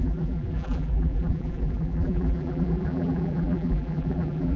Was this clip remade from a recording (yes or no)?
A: yes